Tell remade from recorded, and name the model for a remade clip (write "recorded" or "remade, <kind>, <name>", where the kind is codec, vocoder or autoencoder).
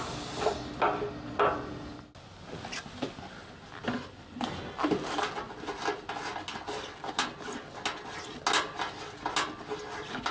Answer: recorded